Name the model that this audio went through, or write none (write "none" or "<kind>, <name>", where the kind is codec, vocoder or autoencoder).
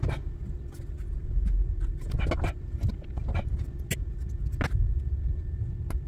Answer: none